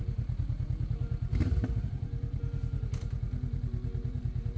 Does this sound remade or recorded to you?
remade